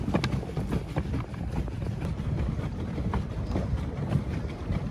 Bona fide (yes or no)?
yes